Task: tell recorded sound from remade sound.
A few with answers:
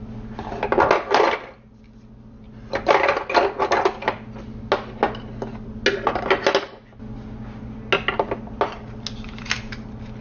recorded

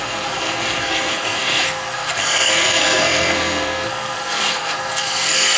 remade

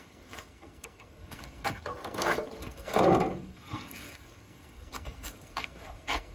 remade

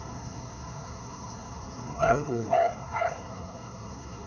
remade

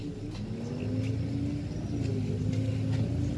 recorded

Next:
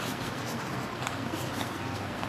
remade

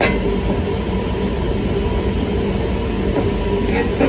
recorded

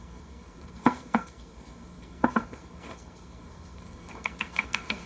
remade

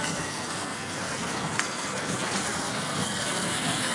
remade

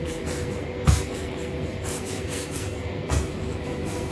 remade